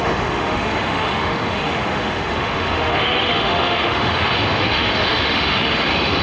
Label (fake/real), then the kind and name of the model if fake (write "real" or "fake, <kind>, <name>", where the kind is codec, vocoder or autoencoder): fake, autoencoder, DAC-VAE